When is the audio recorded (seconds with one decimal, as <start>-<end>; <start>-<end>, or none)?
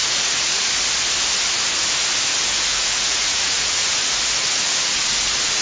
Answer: 0.7-2.7